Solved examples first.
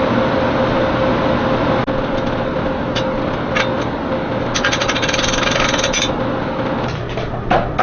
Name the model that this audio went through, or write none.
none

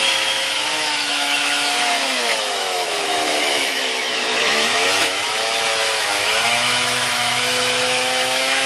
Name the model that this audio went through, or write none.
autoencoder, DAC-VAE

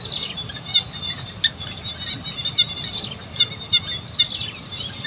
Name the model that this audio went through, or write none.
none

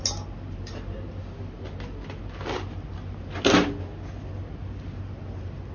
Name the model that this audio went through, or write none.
none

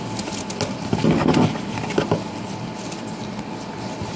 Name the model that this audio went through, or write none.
none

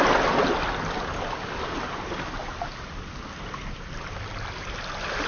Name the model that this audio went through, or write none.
none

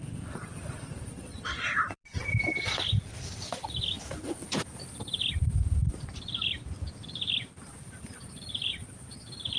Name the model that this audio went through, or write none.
vocoder, BigVGAN v2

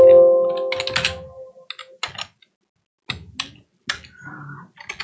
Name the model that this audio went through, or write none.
none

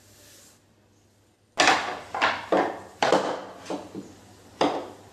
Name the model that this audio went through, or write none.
none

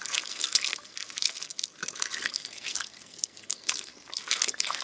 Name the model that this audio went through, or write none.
codec, SNAC